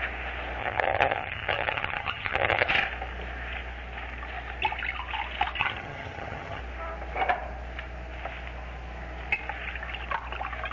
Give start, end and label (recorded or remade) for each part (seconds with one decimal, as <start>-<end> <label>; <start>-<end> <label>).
0.0-0.6 recorded; 0.6-2.7 remade; 2.7-5.6 recorded; 5.6-6.6 remade; 6.6-10.7 recorded